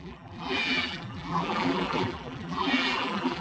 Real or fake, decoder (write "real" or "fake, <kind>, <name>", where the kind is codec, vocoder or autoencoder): fake, vocoder, BigVGAN v2